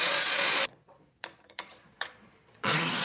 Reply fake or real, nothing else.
fake